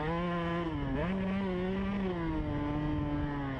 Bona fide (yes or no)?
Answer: yes